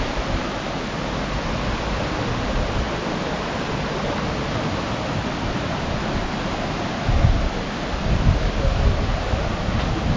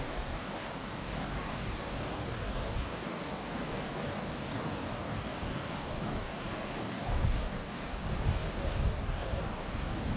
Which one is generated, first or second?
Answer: second